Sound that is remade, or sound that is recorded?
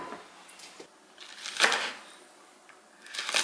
recorded